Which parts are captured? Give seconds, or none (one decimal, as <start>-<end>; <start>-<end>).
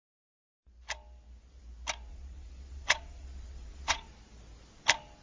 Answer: 0.0-2.1; 4.1-5.2